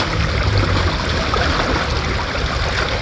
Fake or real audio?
real